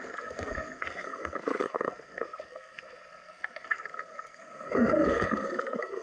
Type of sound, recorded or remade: remade